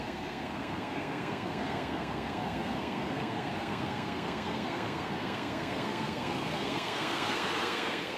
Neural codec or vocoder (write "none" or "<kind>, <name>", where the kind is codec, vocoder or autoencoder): codec, SNAC